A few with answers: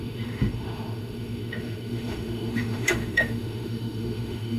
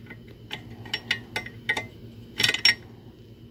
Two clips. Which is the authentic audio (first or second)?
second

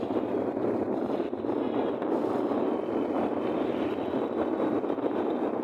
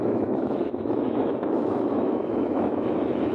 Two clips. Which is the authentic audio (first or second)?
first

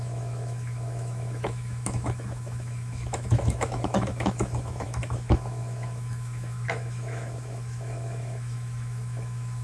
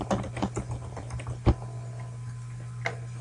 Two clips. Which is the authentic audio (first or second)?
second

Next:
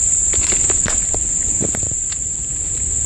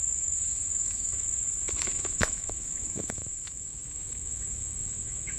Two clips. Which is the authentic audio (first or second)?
first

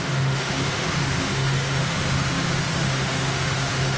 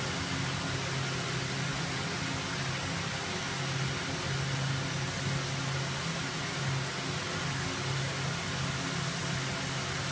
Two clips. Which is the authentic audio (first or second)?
second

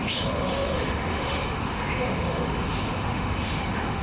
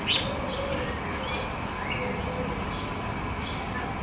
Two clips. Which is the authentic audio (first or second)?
second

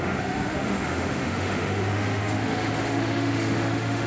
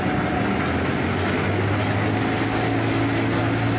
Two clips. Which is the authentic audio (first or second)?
second